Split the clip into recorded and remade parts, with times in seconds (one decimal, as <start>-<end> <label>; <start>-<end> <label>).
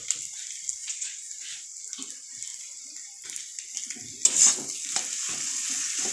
0.0-0.8 recorded; 0.8-1.3 remade; 1.3-6.1 recorded